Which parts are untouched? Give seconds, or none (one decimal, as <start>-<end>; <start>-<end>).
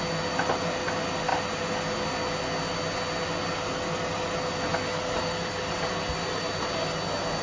0.0-7.4